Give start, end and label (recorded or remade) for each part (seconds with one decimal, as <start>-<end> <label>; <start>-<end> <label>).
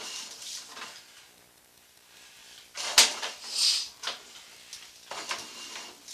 0.0-2.4 remade; 2.4-6.1 recorded